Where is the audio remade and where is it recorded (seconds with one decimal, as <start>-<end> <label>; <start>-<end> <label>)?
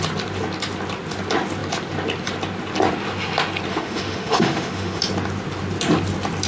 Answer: 0.0-3.7 recorded; 3.7-5.0 remade; 5.0-6.5 recorded